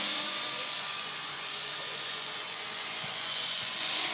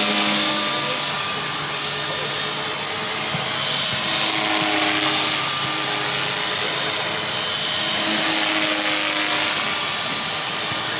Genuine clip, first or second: second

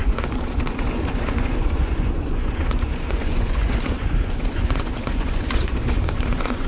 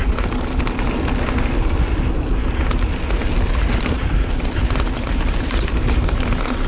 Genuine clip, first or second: second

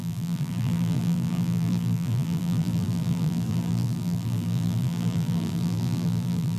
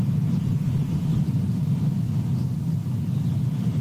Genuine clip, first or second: second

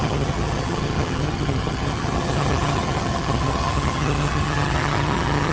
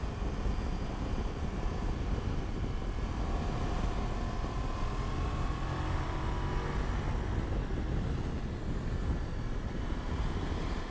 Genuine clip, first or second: second